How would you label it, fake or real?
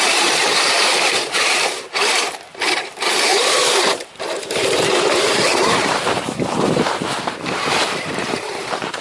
fake